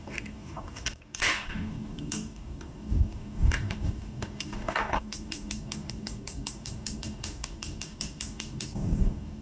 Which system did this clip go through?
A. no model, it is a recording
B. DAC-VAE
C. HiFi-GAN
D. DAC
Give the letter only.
D